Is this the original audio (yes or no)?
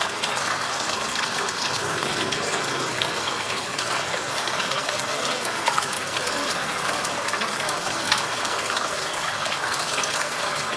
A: no